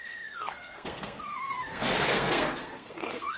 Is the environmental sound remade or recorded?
remade